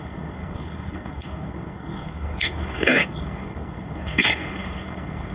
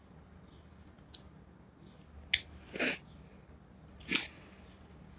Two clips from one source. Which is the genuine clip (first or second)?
second